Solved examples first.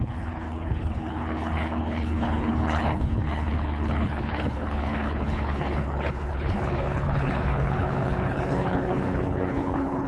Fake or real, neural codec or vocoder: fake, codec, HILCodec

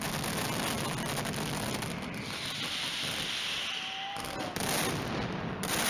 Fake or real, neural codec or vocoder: real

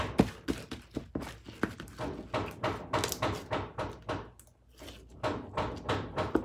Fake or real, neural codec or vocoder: real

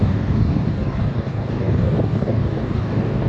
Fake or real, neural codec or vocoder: fake, codec, DAC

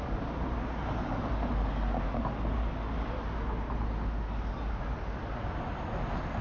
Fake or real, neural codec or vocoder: real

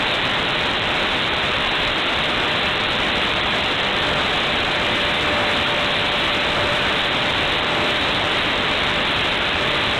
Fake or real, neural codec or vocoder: fake, vocoder, BigVGAN v2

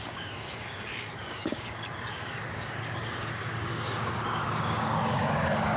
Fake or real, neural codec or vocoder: fake, codec, DAC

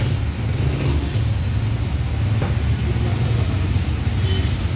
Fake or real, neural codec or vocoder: real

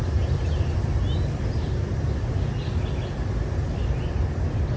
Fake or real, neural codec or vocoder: real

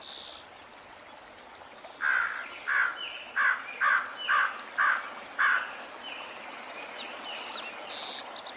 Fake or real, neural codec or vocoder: real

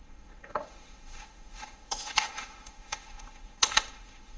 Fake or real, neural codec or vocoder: fake, autoencoder, DAC-VAE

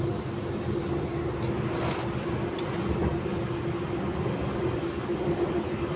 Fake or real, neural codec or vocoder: real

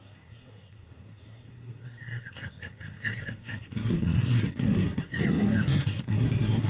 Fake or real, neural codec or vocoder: fake, codec, SNAC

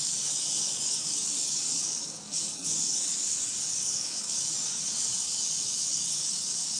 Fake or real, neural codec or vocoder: fake, codec, DAC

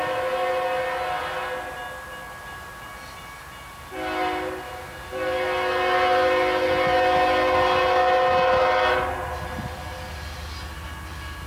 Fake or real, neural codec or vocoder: real